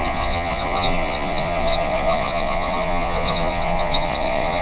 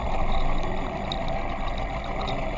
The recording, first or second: second